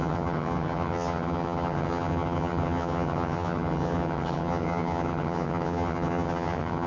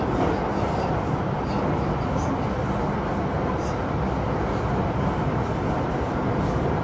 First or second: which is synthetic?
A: first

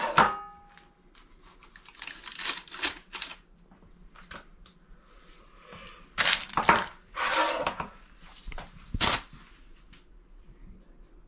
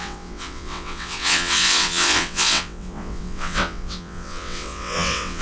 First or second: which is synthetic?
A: second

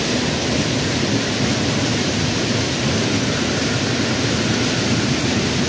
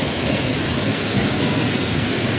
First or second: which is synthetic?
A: second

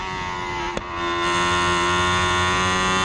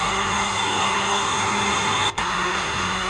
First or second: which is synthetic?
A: second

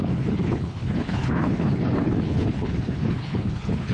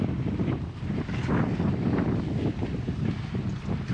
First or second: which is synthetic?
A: first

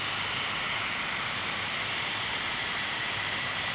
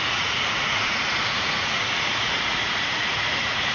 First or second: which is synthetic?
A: second